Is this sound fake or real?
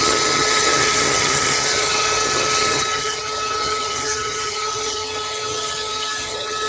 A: fake